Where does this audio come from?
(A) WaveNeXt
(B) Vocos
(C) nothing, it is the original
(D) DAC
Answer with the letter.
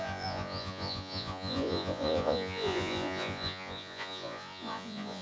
B